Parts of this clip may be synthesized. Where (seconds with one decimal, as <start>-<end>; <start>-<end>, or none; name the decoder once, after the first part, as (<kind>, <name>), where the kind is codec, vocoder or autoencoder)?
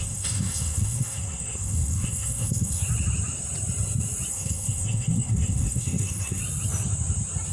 0.0-2.8 (codec, SNAC); 4.3-6.4